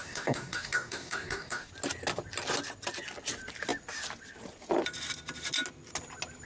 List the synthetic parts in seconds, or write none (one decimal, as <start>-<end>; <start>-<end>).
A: 0.0-1.7